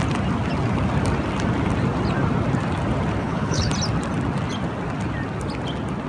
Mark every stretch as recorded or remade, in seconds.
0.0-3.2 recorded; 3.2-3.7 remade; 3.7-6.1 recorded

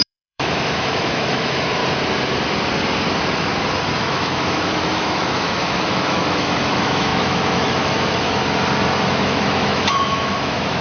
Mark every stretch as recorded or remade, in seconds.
0.0-1.8 remade; 1.8-4.0 recorded; 4.0-8.4 remade; 8.4-9.1 recorded; 9.1-10.8 remade

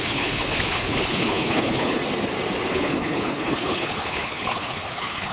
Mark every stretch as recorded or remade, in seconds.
0.0-2.0 remade; 2.0-2.7 recorded; 2.7-5.3 remade